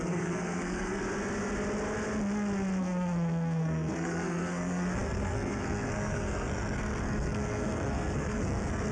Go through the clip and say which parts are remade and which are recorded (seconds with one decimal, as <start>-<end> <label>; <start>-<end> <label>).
0.0-1.0 remade; 1.0-2.8 recorded; 2.8-8.9 remade

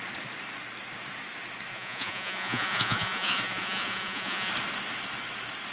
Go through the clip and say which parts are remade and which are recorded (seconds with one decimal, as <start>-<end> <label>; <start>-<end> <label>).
0.0-1.7 recorded; 1.7-4.5 remade; 4.5-5.7 recorded

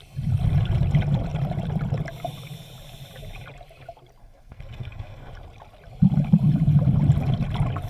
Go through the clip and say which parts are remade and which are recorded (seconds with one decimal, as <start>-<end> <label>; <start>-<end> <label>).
0.0-4.2 recorded; 4.2-5.3 remade; 5.3-7.9 recorded

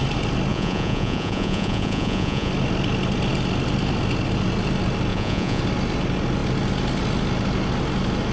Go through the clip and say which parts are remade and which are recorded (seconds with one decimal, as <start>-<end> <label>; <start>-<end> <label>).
0.0-0.5 recorded; 0.5-2.5 remade; 2.5-5.1 recorded; 5.1-5.6 remade; 5.6-8.3 recorded

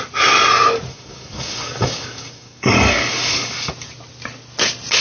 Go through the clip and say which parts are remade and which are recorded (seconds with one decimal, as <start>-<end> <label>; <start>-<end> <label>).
0.0-0.9 recorded; 0.9-3.7 remade; 3.7-5.0 recorded